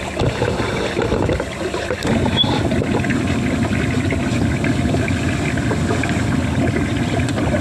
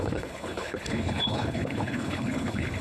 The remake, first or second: second